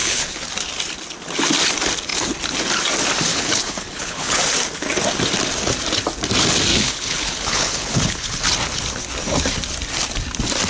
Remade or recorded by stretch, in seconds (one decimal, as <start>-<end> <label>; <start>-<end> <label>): 0.0-0.5 remade; 0.5-3.3 recorded; 3.3-4.4 remade; 4.4-6.7 recorded; 6.7-8.4 remade; 8.4-10.7 recorded